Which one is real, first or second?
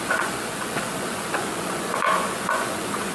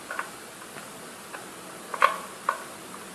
second